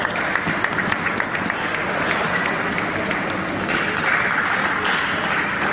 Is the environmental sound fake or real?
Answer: real